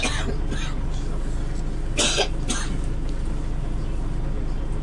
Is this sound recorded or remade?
recorded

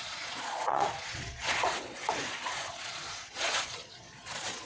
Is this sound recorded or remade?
remade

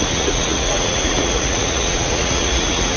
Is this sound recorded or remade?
remade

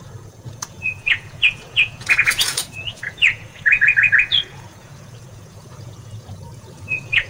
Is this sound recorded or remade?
remade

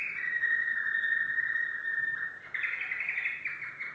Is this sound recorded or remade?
recorded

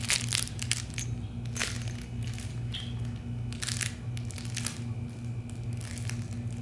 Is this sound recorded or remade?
recorded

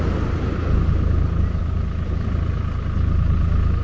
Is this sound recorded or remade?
recorded